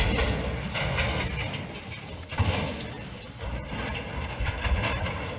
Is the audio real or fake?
real